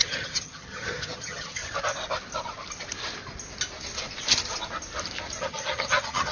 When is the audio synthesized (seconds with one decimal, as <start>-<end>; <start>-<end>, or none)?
0.0-1.6; 5.4-6.3